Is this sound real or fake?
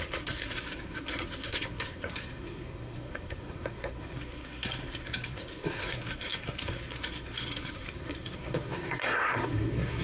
fake